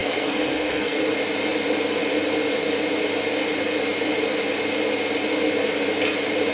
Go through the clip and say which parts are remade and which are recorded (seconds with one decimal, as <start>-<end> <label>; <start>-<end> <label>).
0.0-1.0 remade; 1.0-6.5 recorded